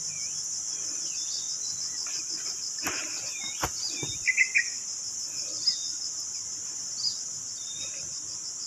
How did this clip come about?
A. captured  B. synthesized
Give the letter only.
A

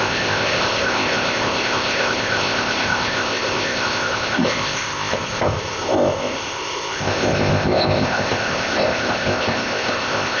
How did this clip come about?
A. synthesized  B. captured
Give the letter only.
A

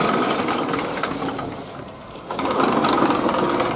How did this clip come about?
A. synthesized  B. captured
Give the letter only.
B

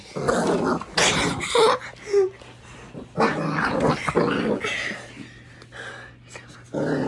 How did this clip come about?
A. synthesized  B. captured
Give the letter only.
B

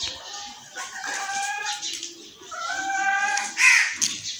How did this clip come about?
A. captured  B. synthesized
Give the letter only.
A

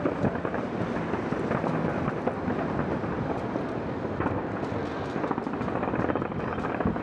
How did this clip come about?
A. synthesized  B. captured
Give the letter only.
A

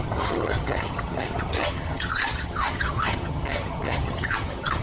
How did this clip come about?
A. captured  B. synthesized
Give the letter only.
B